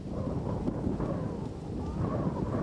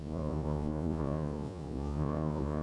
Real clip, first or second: first